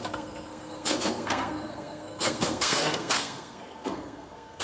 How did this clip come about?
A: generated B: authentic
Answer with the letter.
A